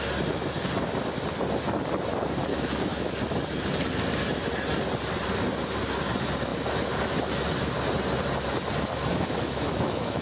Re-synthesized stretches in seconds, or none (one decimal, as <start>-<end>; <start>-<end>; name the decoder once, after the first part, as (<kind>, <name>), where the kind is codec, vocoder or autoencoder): 2.5-3.1 (autoencoder, DAC-VAE); 9.1-10.2